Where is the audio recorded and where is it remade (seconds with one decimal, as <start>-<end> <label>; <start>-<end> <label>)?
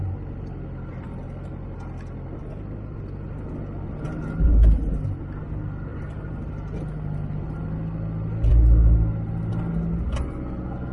0.0-10.9 recorded